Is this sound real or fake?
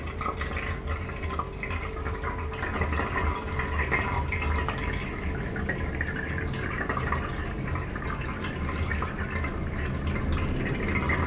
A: real